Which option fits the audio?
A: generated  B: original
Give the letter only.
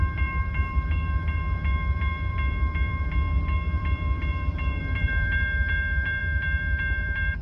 A